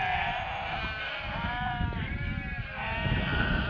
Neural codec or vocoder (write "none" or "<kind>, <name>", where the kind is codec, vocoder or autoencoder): none